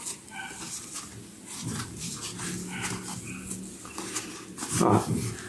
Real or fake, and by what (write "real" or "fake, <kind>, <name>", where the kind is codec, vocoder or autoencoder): real